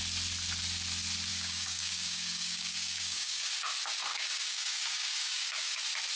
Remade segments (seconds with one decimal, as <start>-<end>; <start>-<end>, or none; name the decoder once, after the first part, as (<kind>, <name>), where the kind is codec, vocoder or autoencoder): 1.3-3.5 (codec, DAC); 4.1-5.8